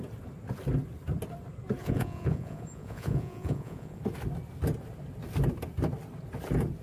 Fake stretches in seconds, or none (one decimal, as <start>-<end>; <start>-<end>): 1.8-4.0